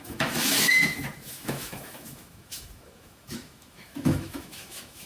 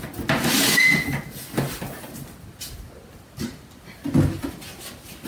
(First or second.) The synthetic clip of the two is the first